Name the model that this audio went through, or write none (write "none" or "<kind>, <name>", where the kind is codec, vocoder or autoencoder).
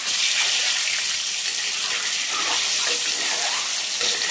none